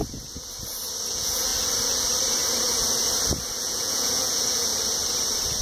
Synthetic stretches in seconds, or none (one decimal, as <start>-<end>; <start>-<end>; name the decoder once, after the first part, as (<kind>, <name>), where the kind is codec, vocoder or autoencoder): 1.1-1.5 (vocoder, Vocos); 3.6-4.7